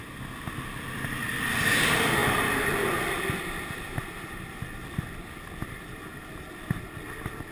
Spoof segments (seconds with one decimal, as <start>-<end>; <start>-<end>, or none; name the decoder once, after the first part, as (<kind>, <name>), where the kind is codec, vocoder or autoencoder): none